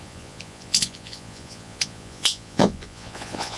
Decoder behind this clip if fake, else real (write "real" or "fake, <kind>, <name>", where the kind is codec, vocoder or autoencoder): fake, vocoder, Vocos